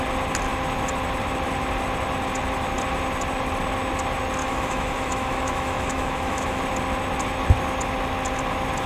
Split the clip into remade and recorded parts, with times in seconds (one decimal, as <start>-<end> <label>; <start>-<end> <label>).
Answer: 0.0-4.4 recorded; 4.4-6.6 remade; 6.6-8.9 recorded